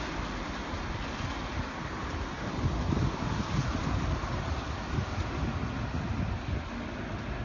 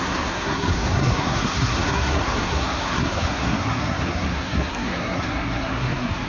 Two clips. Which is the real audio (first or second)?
first